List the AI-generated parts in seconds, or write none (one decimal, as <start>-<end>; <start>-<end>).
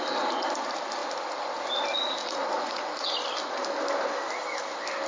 2.2-3.1